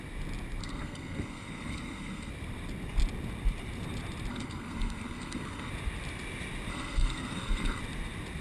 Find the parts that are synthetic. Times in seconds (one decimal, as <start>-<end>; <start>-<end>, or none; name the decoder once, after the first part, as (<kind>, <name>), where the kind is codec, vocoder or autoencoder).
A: 0.6-2.3 (codec, SNAC); 4.3-5.7; 6.7-7.8